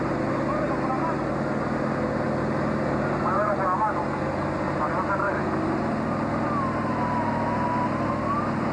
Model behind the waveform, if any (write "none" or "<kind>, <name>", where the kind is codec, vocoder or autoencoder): none